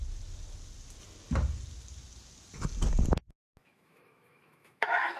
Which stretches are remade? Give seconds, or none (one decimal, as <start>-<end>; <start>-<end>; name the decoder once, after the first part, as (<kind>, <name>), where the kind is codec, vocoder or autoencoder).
3.6-5.2 (autoencoder, DAC-VAE)

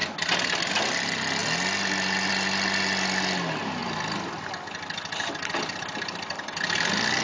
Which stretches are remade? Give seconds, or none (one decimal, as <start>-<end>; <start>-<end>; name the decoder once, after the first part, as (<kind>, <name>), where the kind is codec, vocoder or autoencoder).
3.8-4.5 (vocoder, BigVGAN v2)